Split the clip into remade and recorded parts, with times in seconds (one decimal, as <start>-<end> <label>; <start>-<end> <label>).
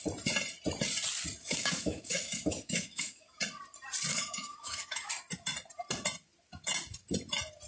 0.0-1.4 recorded; 1.4-3.4 remade; 3.4-4.1 recorded; 4.1-5.1 remade; 5.1-7.7 recorded